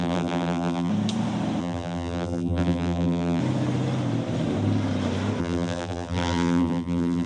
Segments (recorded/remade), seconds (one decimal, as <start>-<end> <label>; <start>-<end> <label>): 0.0-0.9 remade; 0.9-1.6 recorded; 1.6-3.4 remade; 3.4-5.4 recorded; 5.4-7.3 remade